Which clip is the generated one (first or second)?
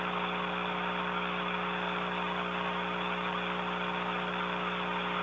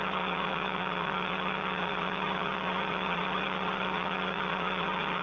second